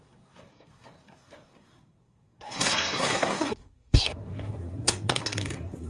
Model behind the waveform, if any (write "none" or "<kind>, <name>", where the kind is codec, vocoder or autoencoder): codec, SNAC